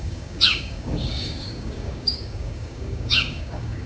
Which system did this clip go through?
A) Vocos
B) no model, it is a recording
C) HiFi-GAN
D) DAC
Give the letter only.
D